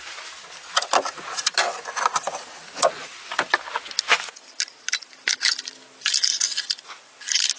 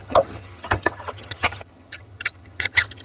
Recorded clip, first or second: first